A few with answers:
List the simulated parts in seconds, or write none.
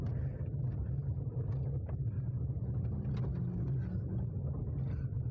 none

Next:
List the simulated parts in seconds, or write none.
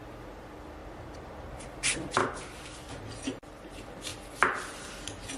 0.8-1.6 (vocoder, BigVGAN v2); 2.2-2.9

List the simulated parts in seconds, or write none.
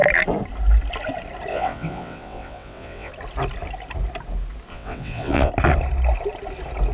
1.5-3.1 (vocoder, WaveNeXt); 4.7-5.5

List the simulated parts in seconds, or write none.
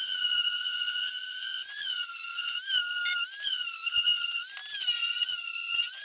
0.0-2.3 (vocoder, Vocos); 5.0-6.0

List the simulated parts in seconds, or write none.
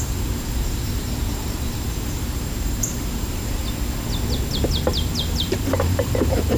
0.0-3.6 (vocoder, BigVGAN v2); 4.8-6.6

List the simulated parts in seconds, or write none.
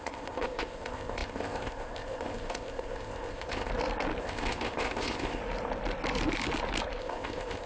0.0-3.7 (codec, ZipCodec); 4.2-5.4; 7.0-7.7